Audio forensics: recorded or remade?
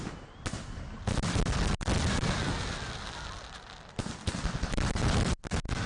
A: recorded